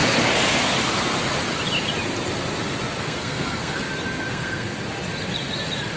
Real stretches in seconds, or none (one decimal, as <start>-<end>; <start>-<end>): 0.0-3.0; 3.8-4.3; 4.7-6.0